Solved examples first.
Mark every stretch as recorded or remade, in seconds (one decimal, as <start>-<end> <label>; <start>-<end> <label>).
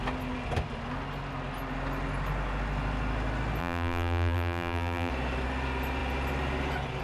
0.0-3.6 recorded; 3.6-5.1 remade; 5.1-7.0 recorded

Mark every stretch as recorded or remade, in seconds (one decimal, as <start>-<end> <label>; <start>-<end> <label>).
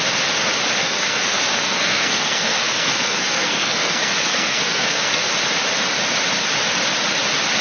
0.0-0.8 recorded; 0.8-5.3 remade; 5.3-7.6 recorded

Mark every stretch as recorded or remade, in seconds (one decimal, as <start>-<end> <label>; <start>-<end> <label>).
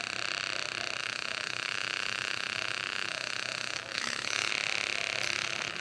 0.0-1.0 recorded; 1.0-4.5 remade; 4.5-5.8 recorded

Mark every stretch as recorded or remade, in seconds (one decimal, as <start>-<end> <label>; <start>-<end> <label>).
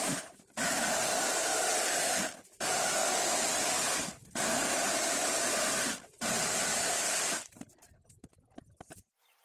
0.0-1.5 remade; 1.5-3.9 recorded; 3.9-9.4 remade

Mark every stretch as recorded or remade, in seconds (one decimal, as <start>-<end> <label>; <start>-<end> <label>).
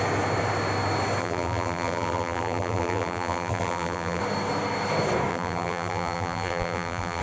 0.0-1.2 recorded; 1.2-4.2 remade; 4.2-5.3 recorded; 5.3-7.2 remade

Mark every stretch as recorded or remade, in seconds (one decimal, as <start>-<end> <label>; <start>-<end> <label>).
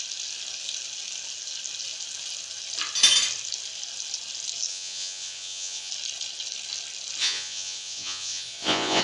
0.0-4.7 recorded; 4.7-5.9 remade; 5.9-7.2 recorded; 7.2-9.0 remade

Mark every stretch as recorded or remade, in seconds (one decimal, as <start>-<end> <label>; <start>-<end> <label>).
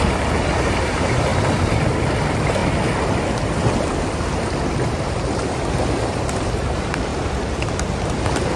0.0-1.3 remade; 1.3-2.1 recorded; 2.1-2.6 remade; 2.6-5.9 recorded; 5.9-7.1 remade; 7.1-8.6 recorded